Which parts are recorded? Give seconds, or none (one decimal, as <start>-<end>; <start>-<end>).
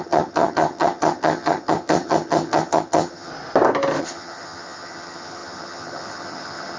3.3-4.0